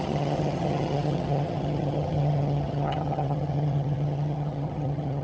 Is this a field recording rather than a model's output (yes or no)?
no